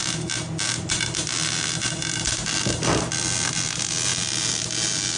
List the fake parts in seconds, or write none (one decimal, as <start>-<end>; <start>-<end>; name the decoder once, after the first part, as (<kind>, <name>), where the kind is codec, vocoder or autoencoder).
none

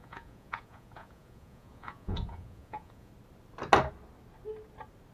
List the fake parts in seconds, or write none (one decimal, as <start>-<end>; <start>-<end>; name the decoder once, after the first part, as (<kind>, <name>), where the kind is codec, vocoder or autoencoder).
0.0-3.1 (vocoder, Vocos)

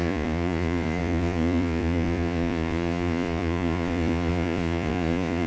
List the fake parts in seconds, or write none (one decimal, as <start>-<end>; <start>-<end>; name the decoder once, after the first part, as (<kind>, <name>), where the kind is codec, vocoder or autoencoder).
0.0-5.5 (vocoder, Vocos)

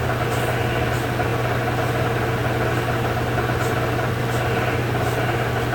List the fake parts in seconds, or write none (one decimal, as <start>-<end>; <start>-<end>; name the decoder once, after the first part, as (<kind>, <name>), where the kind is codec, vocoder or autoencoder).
none

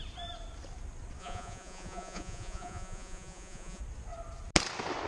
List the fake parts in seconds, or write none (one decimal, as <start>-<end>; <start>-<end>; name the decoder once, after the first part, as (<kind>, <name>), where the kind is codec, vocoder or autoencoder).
1.2-3.8 (vocoder, Vocos)

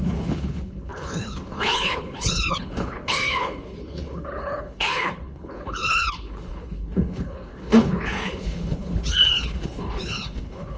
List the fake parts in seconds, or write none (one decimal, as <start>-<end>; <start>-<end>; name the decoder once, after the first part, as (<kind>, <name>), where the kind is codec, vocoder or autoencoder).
0.0-10.8 (codec, HILCodec)